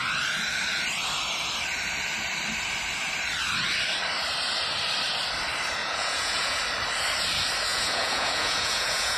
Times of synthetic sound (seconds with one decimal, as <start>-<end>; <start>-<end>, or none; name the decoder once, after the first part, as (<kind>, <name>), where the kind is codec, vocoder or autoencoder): 5.8-6.6 (vocoder, Vocos); 7.7-9.2

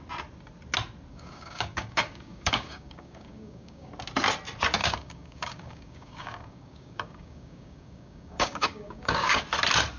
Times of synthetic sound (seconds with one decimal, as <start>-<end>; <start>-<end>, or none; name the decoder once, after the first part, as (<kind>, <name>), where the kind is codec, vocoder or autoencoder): 1.1-3.9 (codec, DAC); 4.8-9.4

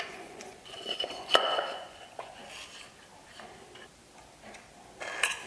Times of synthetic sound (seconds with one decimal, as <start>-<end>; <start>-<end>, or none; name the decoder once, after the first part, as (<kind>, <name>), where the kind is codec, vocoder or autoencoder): 0.0-2.4 (vocoder, Vocos)